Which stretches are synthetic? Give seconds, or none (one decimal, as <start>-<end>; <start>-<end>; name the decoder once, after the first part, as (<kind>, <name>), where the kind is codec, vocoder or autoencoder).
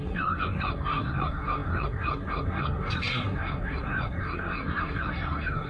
0.0-5.7 (codec, SNAC)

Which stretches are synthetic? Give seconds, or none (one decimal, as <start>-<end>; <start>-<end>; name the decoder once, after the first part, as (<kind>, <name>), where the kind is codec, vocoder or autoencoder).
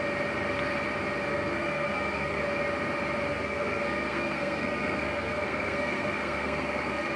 1.3-2.4 (codec, SNAC); 3.3-7.2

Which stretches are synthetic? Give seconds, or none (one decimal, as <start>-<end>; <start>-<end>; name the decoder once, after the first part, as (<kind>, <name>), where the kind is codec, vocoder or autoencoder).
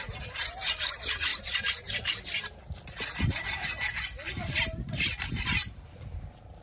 0.0-1.3 (vocoder, BigVGAN v2); 5.3-6.6